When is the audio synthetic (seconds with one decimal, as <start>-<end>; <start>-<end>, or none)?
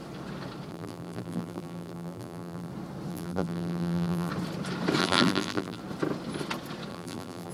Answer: 0.7-2.7; 3.1-4.3; 5.0-5.8; 6.9-7.5